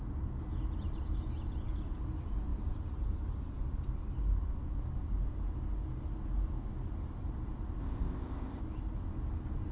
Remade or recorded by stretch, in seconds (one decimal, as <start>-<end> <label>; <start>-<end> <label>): 0.0-7.8 recorded; 7.8-8.6 remade; 8.6-9.7 recorded